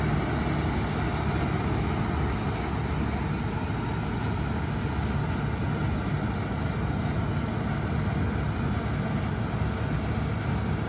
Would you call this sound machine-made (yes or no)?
no